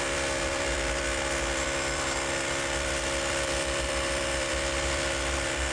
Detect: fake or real fake